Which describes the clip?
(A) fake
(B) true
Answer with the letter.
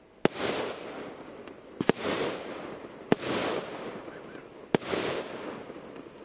B